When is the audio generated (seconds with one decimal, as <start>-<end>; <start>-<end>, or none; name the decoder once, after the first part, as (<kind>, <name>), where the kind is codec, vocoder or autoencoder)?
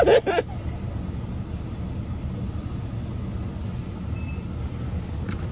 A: none